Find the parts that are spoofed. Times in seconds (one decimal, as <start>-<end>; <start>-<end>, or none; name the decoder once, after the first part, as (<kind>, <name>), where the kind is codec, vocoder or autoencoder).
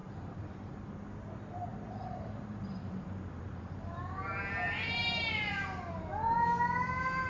0.0-0.9 (vocoder, BigVGAN v2); 1.7-6.1